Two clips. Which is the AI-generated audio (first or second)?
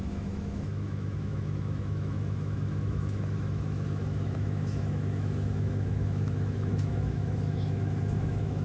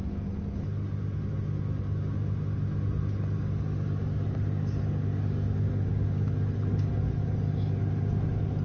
first